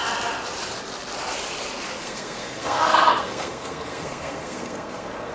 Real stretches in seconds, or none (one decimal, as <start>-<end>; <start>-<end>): 0.0-2.0